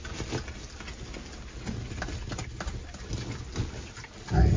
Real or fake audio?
real